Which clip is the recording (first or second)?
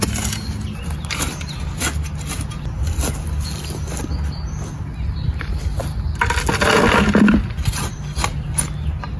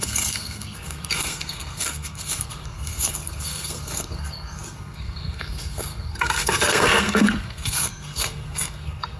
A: first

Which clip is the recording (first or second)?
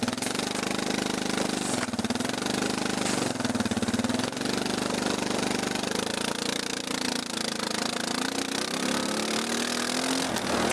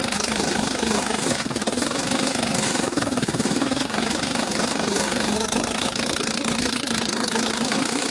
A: first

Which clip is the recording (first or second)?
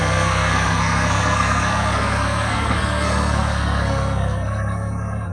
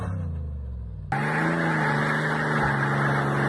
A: second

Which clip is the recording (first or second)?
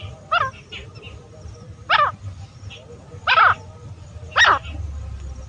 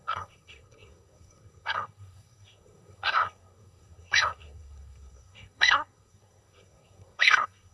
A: first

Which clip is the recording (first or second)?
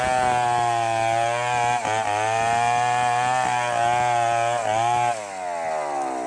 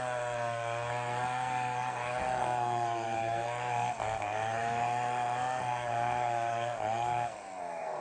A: first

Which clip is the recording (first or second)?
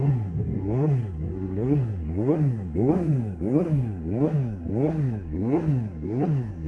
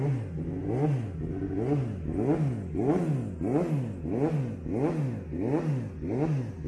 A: second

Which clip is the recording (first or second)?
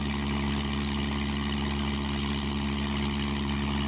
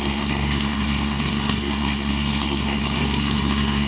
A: first